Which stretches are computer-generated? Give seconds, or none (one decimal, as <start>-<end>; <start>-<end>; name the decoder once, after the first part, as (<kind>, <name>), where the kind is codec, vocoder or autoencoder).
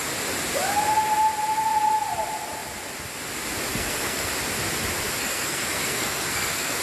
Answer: 3.7-4.3 (codec, SNAC); 5.2-6.8